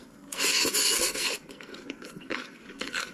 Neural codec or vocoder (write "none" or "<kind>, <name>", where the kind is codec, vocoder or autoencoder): codec, SNAC